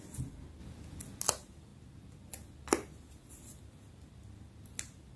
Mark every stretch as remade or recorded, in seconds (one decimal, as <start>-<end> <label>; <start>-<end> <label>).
0.0-5.2 recorded